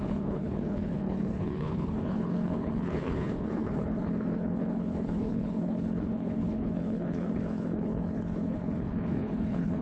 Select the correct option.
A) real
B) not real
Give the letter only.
B